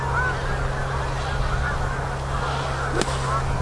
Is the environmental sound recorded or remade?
recorded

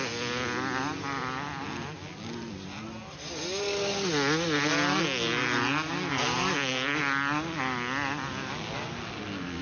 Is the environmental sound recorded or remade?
recorded